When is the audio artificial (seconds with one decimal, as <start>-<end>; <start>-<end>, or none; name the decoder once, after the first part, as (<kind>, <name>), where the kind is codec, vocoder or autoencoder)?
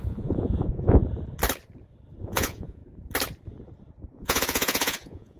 0.0-1.0 (vocoder, Vocos); 2.2-2.8; 4.1-5.4